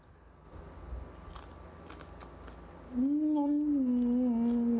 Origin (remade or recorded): recorded